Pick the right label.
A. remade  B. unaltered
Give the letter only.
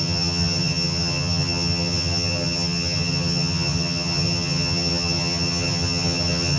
A